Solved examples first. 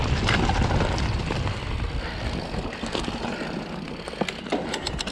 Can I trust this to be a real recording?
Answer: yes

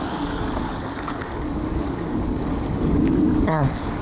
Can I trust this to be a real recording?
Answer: no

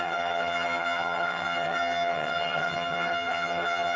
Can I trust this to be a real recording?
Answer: no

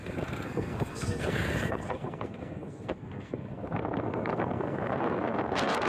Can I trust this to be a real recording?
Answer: no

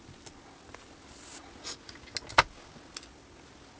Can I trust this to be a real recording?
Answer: yes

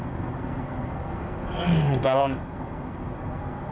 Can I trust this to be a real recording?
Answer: no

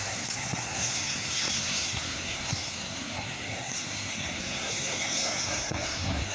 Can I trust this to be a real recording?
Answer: no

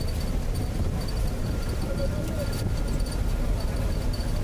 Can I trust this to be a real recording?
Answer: yes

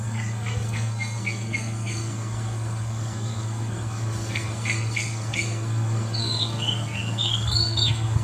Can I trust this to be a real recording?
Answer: no